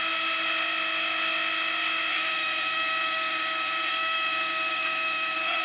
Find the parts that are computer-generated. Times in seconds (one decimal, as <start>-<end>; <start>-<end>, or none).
2.1-5.6